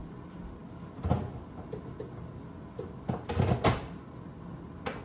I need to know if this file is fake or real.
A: real